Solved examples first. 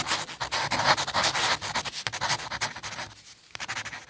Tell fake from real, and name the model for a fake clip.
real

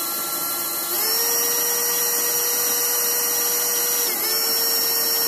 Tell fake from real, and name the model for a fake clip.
real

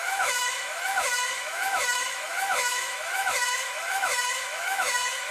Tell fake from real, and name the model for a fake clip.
fake, autoencoder, DAC-VAE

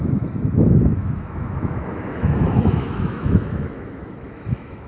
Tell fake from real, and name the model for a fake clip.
fake, autoencoder, DAC-VAE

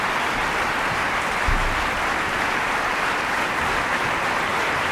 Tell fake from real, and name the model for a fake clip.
real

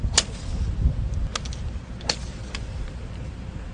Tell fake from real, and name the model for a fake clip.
real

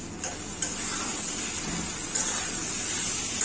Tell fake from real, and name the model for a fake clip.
real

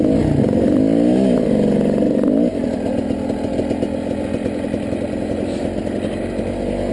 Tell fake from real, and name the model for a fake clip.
real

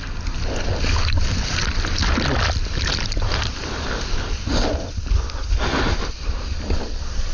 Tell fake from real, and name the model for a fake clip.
real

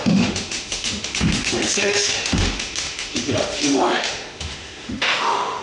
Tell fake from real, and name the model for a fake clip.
fake, autoencoder, DAC-VAE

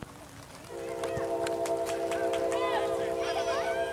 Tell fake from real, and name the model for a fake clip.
real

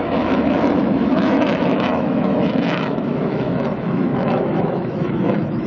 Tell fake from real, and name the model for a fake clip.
fake, autoencoder, DAC-VAE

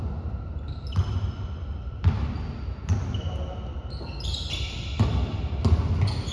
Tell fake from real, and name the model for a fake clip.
real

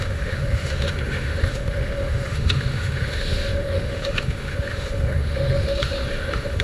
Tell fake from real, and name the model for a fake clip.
fake, autoencoder, DAC-VAE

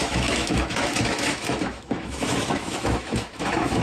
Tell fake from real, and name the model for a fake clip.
fake, autoencoder, DAC-VAE